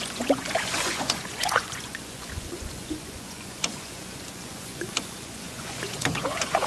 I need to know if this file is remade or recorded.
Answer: remade